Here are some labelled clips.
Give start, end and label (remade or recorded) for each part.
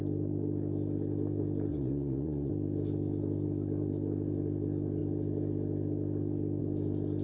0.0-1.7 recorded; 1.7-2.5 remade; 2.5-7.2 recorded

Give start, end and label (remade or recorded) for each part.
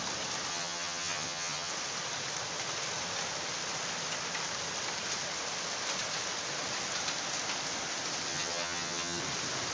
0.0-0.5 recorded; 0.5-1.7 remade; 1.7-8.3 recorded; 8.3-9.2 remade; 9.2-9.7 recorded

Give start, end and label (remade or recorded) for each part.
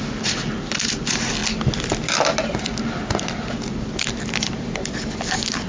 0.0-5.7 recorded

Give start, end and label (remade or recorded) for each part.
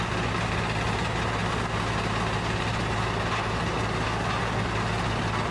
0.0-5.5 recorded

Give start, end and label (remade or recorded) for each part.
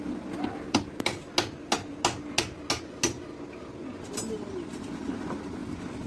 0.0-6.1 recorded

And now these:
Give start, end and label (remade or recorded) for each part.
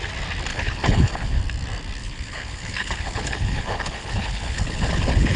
0.0-0.5 recorded; 0.5-1.4 remade; 1.4-2.0 recorded; 2.0-5.4 remade